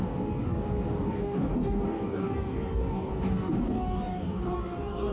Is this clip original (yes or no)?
no